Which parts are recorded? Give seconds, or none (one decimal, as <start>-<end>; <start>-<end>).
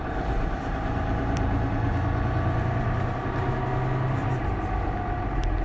1.9-4.8